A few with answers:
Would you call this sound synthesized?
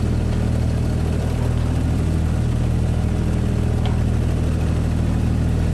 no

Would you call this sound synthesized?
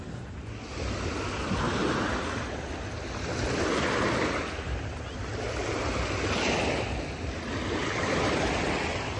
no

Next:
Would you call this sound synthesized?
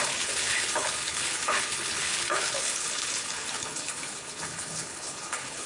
yes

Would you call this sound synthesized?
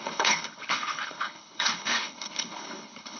yes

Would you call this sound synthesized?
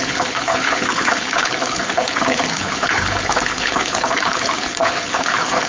yes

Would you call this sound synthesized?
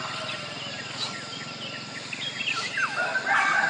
no